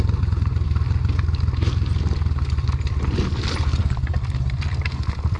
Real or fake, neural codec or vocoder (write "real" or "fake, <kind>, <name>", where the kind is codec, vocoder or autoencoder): real